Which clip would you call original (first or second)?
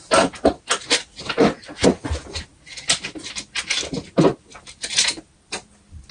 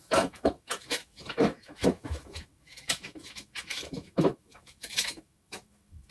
first